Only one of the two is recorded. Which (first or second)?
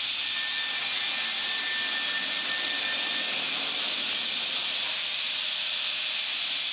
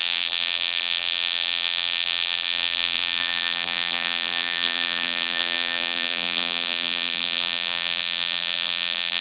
first